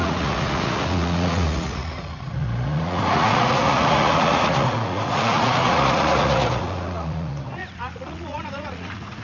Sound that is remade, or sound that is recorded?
remade